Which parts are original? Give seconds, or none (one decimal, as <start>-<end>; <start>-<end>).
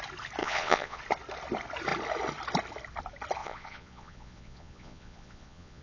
0.0-0.4; 1.0-3.4